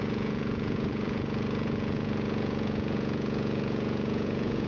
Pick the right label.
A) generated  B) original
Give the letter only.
A